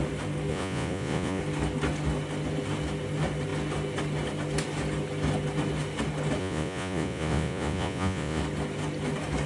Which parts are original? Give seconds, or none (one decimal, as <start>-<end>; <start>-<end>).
0.0-0.5; 1.4-6.4; 8.4-9.5